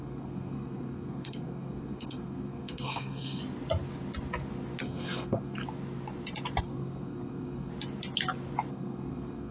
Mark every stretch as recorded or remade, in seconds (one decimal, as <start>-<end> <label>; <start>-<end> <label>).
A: 0.0-3.4 remade; 3.4-4.8 recorded; 4.8-5.6 remade; 5.6-6.6 recorded; 6.6-7.7 remade; 7.7-8.7 recorded; 8.7-9.5 remade